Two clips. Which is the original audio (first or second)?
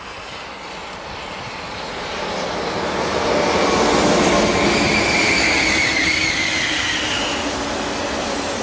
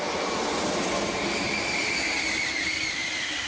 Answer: first